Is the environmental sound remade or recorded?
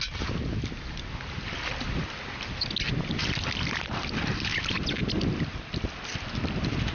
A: recorded